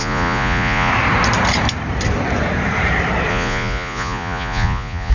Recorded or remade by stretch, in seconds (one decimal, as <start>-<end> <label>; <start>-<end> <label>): 0.0-0.9 remade; 0.9-3.3 recorded; 3.3-5.1 remade